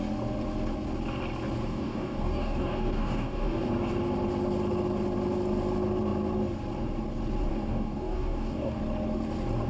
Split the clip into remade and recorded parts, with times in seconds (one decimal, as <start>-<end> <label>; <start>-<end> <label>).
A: 0.0-1.7 recorded; 1.7-3.7 remade; 3.7-7.5 recorded; 7.5-8.8 remade; 8.8-9.7 recorded

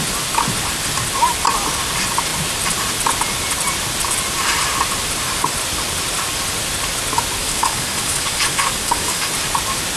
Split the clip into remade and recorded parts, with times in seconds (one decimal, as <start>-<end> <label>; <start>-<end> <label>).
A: 0.0-7.4 recorded; 7.4-9.3 remade; 9.3-10.0 recorded

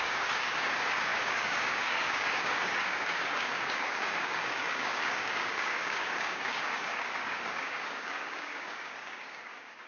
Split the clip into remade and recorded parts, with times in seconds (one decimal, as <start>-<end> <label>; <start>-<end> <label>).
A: 0.0-9.9 remade

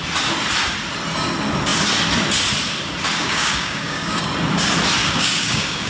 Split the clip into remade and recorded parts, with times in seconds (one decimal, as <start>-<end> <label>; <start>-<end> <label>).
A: 0.0-3.2 recorded; 3.2-4.2 remade; 4.2-5.0 recorded; 5.0-5.9 remade

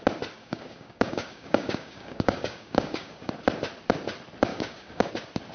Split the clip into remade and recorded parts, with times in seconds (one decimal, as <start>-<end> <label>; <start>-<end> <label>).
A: 0.0-0.4 recorded; 0.4-3.3 remade; 3.3-4.5 recorded; 4.5-5.1 remade; 5.1-5.5 recorded

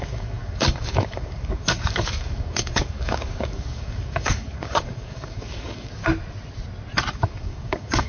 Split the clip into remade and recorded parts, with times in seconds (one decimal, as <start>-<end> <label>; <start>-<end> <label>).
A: 0.0-6.0 remade; 6.0-7.1 recorded; 7.1-8.1 remade

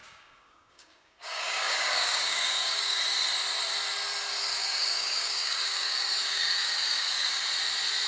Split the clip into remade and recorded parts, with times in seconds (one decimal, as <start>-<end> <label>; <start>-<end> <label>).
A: 0.0-3.0 remade; 3.0-4.5 recorded; 4.5-7.4 remade; 7.4-8.1 recorded